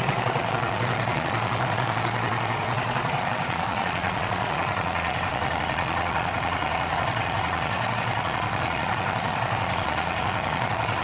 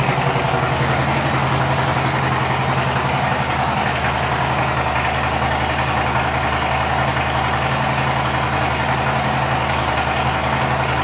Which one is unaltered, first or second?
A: second